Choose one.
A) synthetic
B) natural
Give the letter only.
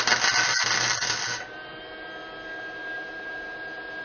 B